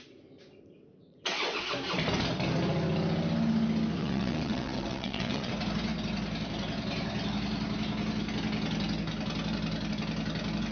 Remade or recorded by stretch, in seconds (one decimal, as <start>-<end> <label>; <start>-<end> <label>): 0.0-1.1 recorded; 1.1-1.6 remade; 1.6-4.0 recorded; 4.0-5.5 remade; 5.5-10.7 recorded